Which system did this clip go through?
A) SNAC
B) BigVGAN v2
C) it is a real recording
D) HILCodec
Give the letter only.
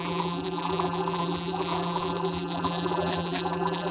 B